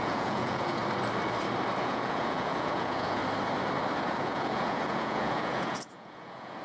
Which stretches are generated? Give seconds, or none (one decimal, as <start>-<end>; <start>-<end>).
0.0-0.8; 1.8-3.2; 4.0-6.6